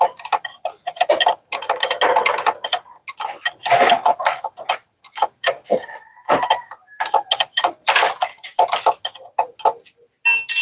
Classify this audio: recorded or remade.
recorded